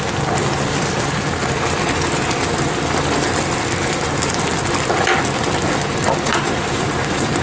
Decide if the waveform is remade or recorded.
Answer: recorded